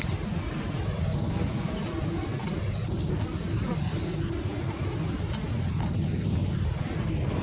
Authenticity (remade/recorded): recorded